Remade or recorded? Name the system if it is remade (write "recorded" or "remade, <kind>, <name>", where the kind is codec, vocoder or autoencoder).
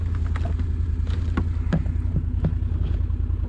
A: recorded